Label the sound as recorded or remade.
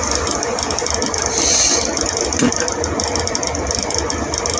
recorded